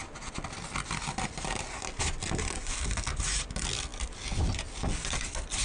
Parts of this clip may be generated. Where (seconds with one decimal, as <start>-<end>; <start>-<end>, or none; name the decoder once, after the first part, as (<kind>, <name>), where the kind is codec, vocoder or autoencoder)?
none